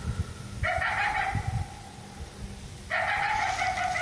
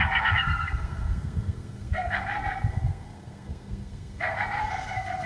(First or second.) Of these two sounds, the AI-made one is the second